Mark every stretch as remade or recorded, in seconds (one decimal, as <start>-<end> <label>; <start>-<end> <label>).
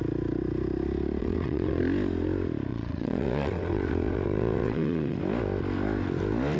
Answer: 0.0-1.2 recorded; 1.2-1.8 remade; 1.8-2.7 recorded; 2.7-5.2 remade; 5.2-6.6 recorded